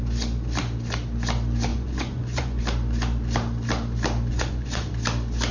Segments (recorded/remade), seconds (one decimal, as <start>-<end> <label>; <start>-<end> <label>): 0.0-1.7 recorded; 1.7-2.6 remade; 2.6-4.3 recorded; 4.3-4.9 remade; 4.9-5.5 recorded